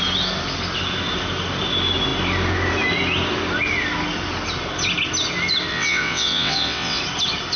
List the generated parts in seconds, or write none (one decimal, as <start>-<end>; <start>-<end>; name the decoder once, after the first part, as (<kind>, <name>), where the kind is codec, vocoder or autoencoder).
5.7-7.0 (vocoder, WaveNeXt)